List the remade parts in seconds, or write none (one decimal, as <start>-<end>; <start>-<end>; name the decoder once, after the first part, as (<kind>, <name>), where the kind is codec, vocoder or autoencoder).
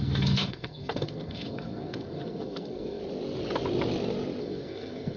0.0-3.0 (codec, SNAC); 4.4-5.2